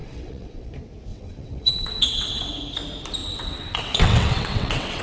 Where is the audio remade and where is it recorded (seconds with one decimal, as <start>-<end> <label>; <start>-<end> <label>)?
0.0-0.7 remade; 0.7-1.1 recorded; 1.1-2.5 remade; 2.5-3.2 recorded; 3.2-5.0 remade